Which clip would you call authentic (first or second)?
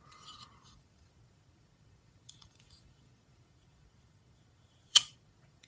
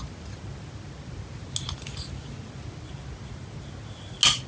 second